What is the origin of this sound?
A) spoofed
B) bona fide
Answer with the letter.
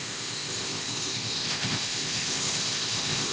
A